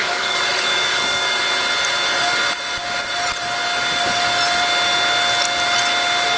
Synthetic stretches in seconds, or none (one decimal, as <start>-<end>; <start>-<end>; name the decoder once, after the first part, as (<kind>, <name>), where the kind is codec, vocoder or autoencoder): 0.0-1.4 (codec, DAC)